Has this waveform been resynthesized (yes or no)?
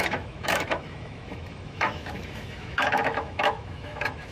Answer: yes